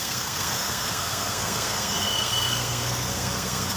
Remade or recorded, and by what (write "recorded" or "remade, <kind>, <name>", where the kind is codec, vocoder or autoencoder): remade, codec, SNAC